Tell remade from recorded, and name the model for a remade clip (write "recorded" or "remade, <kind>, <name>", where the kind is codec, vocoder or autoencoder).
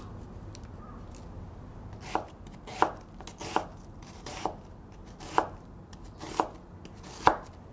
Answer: recorded